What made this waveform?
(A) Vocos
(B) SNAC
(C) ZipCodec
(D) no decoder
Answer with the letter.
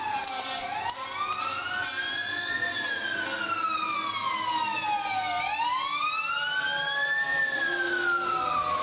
D